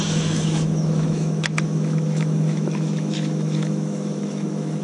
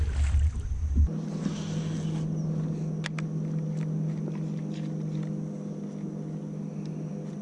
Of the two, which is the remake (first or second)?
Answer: first